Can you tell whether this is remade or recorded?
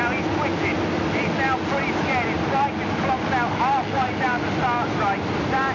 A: recorded